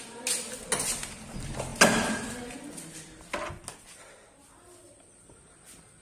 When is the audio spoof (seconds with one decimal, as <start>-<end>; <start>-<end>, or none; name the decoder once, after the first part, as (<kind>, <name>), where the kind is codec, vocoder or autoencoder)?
none